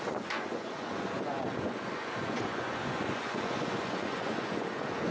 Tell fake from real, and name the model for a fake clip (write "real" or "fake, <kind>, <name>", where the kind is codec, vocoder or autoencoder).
fake, vocoder, Vocos